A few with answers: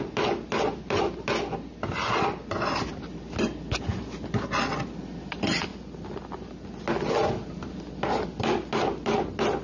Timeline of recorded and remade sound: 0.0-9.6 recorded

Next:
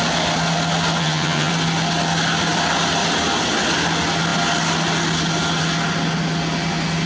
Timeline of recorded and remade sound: 0.0-1.0 recorded; 1.0-1.5 remade; 1.5-7.1 recorded

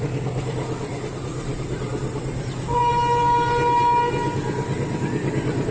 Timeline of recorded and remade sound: 0.0-5.7 recorded

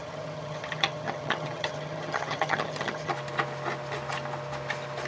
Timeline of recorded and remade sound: 0.0-3.1 remade; 3.1-5.1 recorded

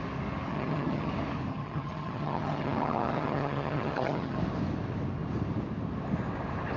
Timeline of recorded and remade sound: 0.0-0.5 recorded; 0.5-1.1 remade; 1.1-1.5 recorded; 1.5-4.4 remade; 4.4-6.8 recorded

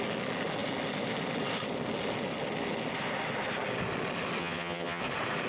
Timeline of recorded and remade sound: 0.0-4.4 recorded; 4.4-5.0 remade; 5.0-5.5 recorded

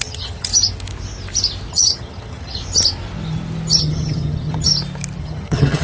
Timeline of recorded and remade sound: 0.0-0.5 remade; 0.5-1.7 recorded; 1.7-2.6 remade; 2.6-3.8 recorded; 3.8-4.7 remade; 4.7-5.2 recorded; 5.2-5.8 remade

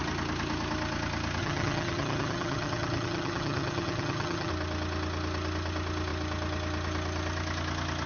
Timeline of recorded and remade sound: 0.0-1.4 recorded; 1.4-4.5 remade; 4.5-8.1 recorded